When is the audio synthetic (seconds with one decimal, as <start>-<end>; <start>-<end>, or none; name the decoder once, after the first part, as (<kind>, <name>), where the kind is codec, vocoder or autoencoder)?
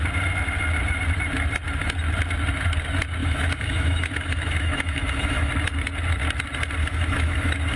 3.2-5.5 (autoencoder, DAC-VAE); 6.8-7.8